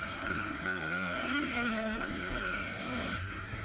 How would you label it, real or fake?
fake